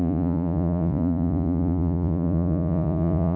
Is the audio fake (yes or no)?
yes